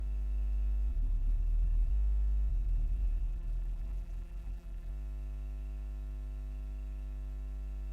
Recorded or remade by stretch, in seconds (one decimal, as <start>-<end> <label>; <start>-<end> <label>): 0.0-0.9 recorded; 0.9-1.9 remade; 1.9-2.5 recorded; 2.5-4.9 remade; 4.9-7.9 recorded